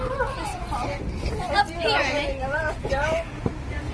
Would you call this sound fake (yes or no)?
no